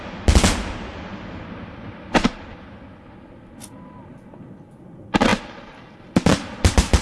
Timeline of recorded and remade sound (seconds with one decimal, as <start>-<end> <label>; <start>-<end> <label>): 0.0-7.0 recorded